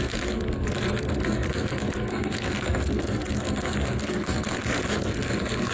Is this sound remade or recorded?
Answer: remade